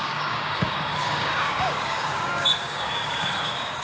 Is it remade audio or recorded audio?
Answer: remade